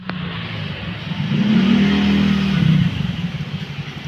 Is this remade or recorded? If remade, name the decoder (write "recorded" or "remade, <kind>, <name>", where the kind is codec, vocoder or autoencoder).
recorded